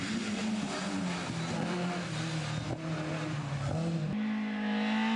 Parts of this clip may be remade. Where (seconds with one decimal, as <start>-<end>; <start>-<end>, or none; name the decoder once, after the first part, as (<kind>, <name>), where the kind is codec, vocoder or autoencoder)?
none